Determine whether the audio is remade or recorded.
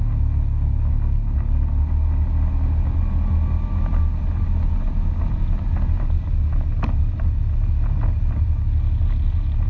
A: recorded